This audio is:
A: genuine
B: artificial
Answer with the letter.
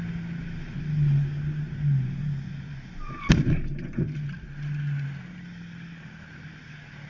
A